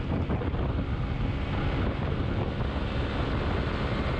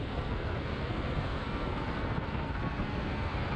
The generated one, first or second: second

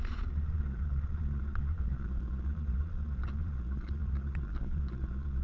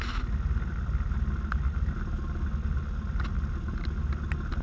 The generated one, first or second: first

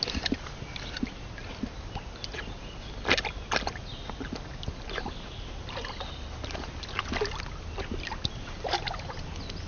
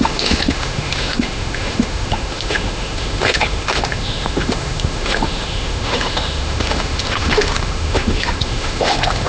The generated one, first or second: second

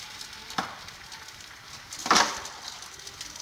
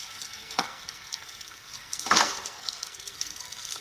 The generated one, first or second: second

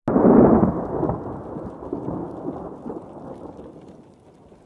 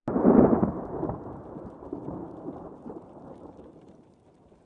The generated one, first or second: second